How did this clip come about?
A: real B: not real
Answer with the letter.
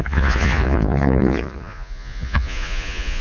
B